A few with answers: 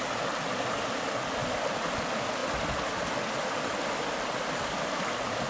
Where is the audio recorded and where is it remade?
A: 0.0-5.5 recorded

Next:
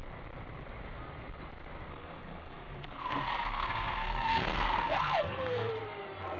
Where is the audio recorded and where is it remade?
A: 0.0-1.9 recorded; 1.9-5.7 remade; 5.7-6.4 recorded

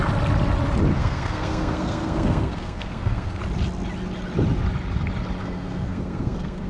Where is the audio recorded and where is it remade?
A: 0.0-0.9 recorded; 0.9-3.4 remade; 3.4-5.4 recorded; 5.4-6.7 remade

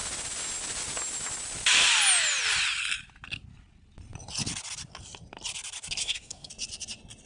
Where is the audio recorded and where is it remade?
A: 0.0-6.0 recorded; 6.0-6.5 remade; 6.5-7.3 recorded